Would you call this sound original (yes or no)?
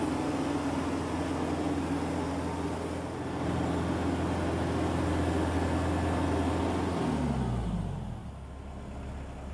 yes